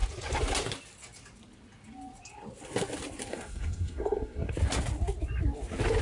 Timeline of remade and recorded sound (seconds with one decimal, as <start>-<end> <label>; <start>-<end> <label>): 0.0-3.3 recorded; 3.3-4.5 remade; 4.5-6.0 recorded